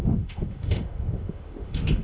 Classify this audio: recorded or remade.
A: remade